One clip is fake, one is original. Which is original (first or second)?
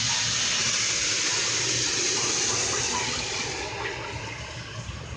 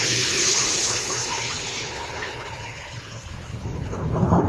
first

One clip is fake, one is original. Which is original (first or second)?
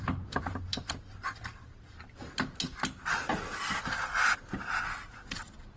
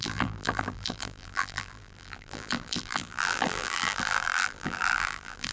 first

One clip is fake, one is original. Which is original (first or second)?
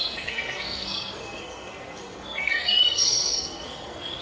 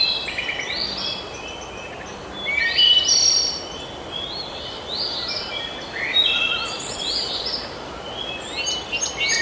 second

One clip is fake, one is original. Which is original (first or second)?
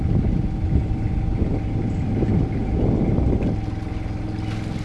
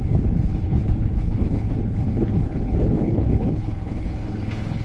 first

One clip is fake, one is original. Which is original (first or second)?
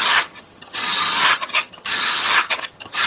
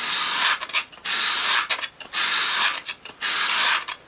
second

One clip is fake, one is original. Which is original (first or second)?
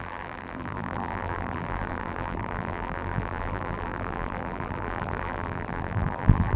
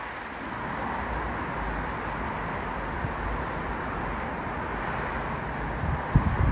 second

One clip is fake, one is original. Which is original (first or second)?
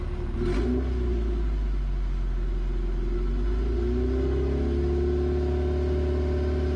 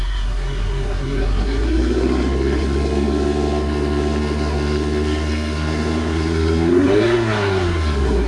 first